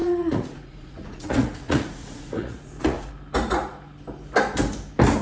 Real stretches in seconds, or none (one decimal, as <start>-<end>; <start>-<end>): 3.1-5.2